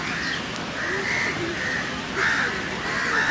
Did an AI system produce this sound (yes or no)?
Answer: yes